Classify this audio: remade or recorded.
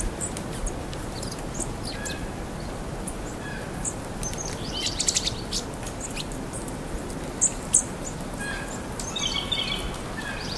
recorded